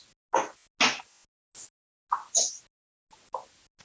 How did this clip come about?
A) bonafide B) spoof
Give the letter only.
A